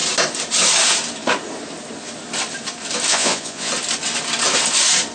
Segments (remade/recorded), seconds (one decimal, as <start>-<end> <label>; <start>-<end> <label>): 0.0-3.1 recorded; 3.1-3.7 remade; 3.7-5.1 recorded

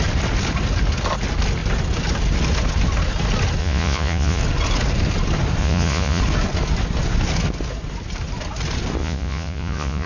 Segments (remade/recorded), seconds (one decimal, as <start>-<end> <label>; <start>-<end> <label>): 0.0-3.6 recorded; 3.6-4.4 remade; 4.4-5.6 recorded; 5.6-6.2 remade; 6.2-9.0 recorded; 9.0-10.1 remade

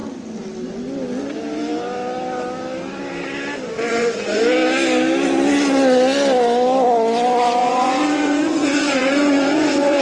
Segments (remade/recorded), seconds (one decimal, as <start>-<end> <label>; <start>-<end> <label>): 0.0-3.9 recorded; 3.9-4.4 remade; 4.4-7.6 recorded; 7.6-10.0 remade

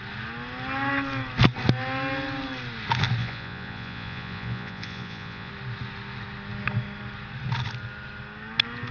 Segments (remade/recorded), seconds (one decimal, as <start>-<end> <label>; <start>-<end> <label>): 0.0-3.2 recorded; 3.2-5.5 remade; 5.5-8.9 recorded